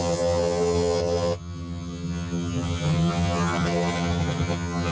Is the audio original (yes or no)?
no